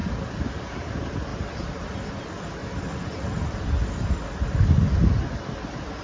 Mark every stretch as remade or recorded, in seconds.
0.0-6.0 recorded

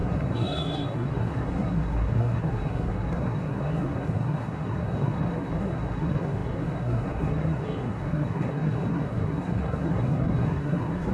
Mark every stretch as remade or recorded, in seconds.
0.0-11.1 remade

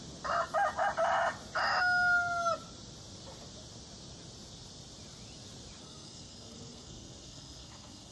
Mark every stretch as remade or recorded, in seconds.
0.0-5.8 recorded; 5.8-8.1 remade

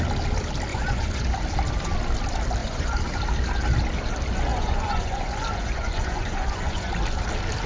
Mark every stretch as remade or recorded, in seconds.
0.0-0.7 recorded; 0.7-1.2 remade; 1.2-2.6 recorded; 2.6-3.2 remade; 3.2-4.5 recorded; 4.5-6.9 remade; 6.9-7.7 recorded

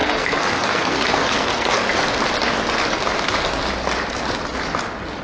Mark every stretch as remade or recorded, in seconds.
0.0-1.9 remade; 1.9-5.2 recorded

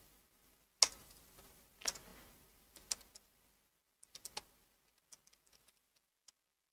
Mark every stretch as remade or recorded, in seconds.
0.0-1.0 recorded; 1.0-1.6 remade; 1.6-6.7 recorded

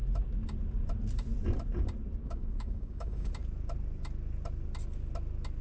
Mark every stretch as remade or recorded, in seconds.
0.0-2.2 recorded; 2.2-3.3 remade; 3.3-5.6 recorded

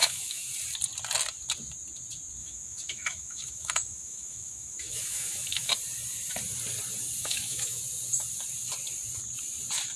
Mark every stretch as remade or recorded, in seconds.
0.0-0.5 remade; 0.5-2.4 recorded; 2.4-5.7 remade; 5.7-7.2 recorded; 7.2-7.8 remade; 7.8-10.0 recorded